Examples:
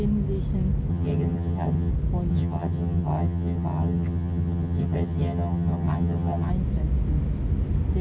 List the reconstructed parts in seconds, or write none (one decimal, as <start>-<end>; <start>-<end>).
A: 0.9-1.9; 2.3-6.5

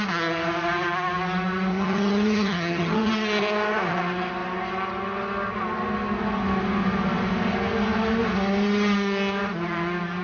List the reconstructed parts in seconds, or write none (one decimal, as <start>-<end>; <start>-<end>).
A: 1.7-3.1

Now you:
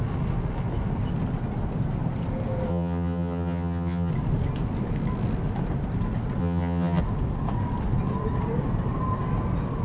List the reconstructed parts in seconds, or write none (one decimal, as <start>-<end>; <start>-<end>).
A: 2.7-4.1; 6.4-7.0